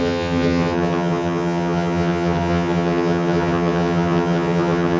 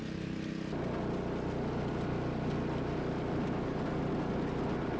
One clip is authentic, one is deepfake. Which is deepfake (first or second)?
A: first